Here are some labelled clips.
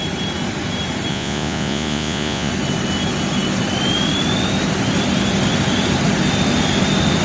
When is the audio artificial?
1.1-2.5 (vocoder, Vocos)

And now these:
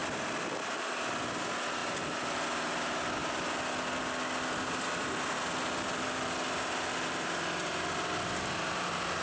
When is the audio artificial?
none